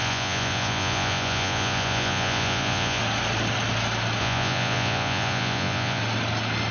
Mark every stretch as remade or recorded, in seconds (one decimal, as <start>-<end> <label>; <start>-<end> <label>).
0.0-3.0 remade; 3.0-4.2 recorded; 4.2-6.0 remade; 6.0-6.7 recorded